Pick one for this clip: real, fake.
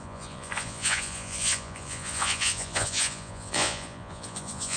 fake